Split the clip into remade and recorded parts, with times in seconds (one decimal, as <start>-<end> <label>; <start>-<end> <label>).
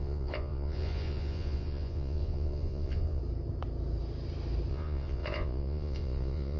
0.0-3.2 remade; 3.2-4.7 recorded; 4.7-6.6 remade